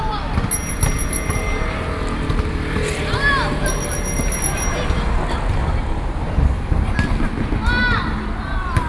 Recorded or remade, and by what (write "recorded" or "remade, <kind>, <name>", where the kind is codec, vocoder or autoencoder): recorded